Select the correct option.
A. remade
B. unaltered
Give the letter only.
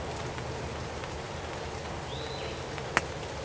B